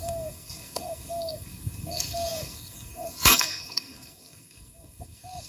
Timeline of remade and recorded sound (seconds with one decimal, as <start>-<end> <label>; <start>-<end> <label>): 0.0-5.5 remade